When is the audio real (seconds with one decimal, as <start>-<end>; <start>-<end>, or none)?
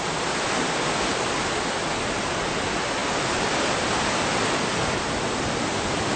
0.0-6.2